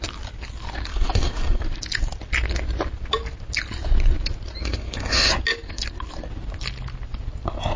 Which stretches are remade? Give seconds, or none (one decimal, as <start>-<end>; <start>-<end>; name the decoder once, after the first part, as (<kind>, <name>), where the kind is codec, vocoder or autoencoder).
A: 0.9-1.6 (codec, SNAC); 4.6-5.3